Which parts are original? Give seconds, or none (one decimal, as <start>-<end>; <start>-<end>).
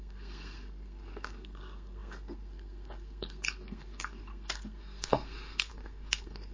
none